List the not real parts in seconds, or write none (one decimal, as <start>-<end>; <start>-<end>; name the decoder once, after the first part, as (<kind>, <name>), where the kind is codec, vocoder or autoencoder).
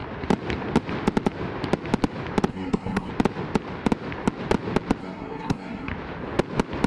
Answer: 2.5-3.1 (codec, SNAC); 5.0-5.9